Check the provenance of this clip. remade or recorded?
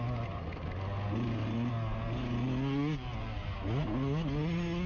recorded